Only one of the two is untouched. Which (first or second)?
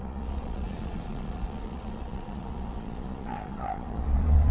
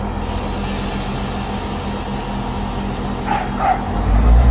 second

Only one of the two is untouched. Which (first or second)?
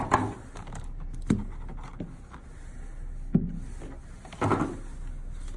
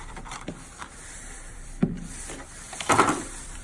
first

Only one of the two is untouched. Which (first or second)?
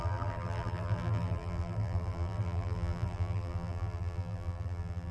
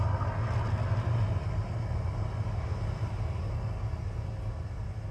second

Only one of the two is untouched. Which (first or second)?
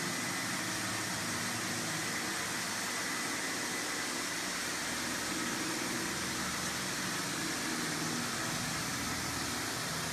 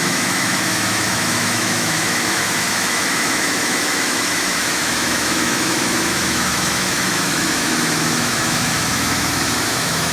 first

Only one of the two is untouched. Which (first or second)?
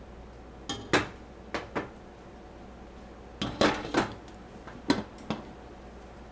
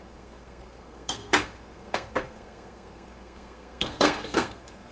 first